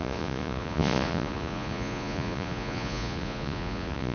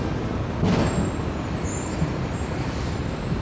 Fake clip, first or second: first